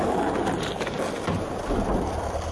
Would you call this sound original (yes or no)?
yes